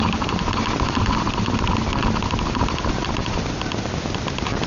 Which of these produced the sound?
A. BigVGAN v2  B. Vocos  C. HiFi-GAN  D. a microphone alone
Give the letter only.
D